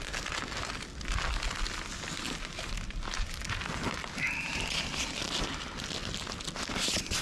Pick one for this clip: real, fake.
real